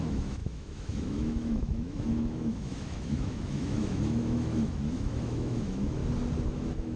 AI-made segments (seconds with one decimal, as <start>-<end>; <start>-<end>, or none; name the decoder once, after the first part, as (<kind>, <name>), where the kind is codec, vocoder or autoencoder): 0.0-6.0 (autoencoder, DAC-VAE); 6.5-7.0